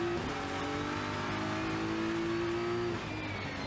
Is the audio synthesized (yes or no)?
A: no